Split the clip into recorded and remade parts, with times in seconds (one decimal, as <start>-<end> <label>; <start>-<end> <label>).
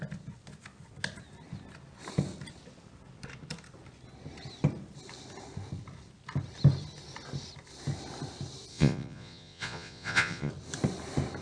0.0-8.7 recorded; 8.7-10.5 remade; 10.5-11.4 recorded